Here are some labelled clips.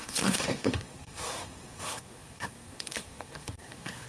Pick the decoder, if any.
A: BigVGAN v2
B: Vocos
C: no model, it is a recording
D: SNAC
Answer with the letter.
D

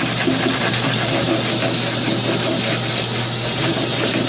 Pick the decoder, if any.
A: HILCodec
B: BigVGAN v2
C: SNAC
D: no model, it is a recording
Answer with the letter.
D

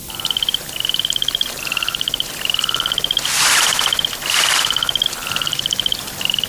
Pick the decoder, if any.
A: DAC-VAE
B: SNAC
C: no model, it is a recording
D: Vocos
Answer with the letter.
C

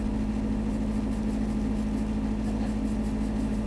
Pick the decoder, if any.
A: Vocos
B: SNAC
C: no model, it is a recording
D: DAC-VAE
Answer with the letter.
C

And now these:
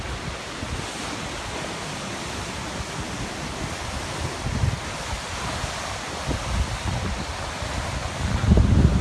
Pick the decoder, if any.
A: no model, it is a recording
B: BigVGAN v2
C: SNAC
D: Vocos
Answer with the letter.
A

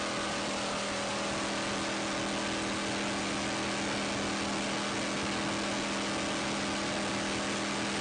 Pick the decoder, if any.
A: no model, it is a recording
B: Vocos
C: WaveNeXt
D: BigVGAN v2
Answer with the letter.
A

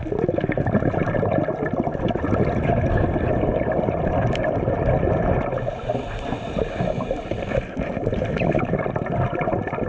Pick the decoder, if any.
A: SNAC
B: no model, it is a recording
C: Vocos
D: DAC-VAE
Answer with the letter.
B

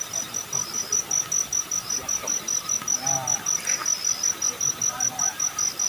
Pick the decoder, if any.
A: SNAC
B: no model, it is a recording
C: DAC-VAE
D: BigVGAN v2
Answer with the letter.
B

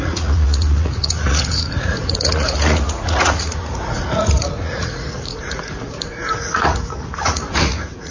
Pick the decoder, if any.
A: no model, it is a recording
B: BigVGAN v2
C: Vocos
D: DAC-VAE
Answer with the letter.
C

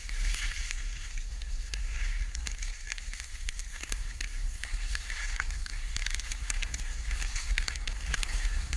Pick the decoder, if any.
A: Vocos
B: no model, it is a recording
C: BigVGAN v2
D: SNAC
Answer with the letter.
D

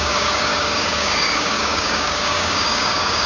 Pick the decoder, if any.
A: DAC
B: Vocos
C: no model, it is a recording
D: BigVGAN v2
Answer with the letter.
A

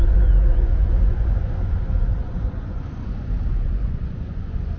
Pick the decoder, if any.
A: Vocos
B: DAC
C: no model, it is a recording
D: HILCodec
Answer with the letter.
A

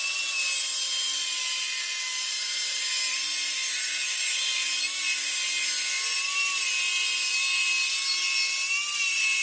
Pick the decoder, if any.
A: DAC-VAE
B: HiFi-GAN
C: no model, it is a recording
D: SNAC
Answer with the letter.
C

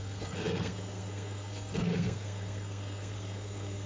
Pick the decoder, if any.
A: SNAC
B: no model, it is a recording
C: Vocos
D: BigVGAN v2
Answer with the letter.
A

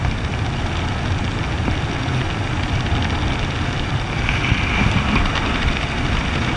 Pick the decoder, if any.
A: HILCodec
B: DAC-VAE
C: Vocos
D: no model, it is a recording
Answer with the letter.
D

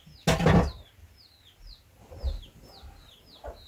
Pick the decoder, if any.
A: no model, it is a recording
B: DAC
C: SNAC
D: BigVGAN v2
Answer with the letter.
A